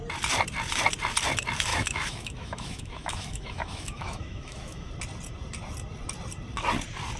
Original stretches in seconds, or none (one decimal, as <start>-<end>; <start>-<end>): 0.0-1.7; 4.9-7.2